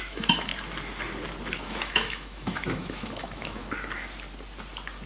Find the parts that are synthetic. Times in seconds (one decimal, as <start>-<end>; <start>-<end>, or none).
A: 0.0-0.5; 1.5-3.6